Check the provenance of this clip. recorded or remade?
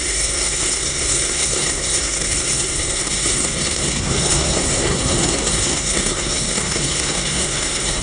remade